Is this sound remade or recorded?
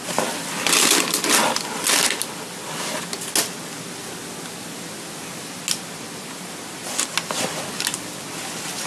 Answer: recorded